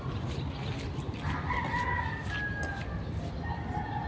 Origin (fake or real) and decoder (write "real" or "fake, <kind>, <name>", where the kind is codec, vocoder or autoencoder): real